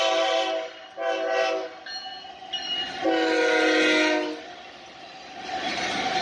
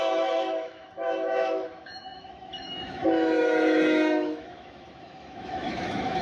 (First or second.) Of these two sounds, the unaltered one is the first